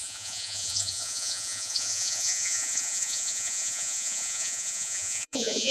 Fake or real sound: fake